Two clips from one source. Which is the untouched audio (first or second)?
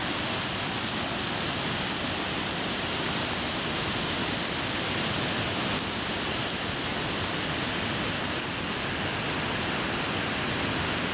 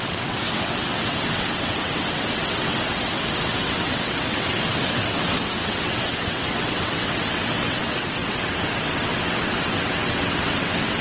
first